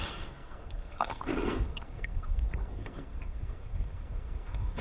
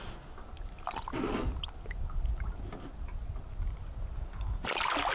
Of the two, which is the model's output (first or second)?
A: first